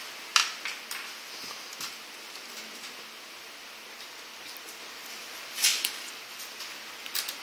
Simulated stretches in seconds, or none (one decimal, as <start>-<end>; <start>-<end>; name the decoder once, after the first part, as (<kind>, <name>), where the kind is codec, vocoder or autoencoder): none